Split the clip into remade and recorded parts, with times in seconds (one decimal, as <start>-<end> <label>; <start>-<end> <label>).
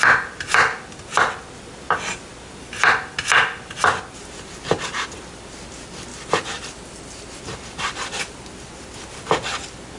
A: 0.0-6.1 recorded; 6.1-7.4 remade; 7.4-10.0 recorded